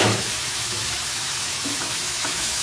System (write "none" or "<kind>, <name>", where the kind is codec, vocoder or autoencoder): autoencoder, DAC-VAE